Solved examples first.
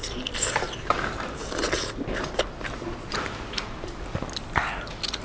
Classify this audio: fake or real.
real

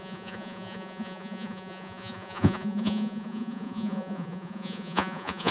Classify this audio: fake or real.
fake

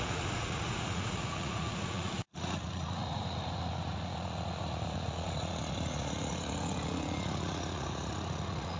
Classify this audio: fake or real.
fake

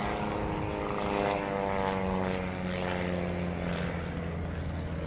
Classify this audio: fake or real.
real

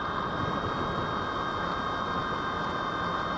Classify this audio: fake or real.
real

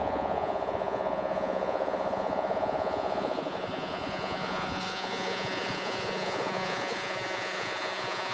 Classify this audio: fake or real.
fake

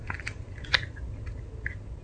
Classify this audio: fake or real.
real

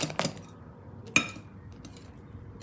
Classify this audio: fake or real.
real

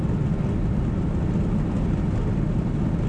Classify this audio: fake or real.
real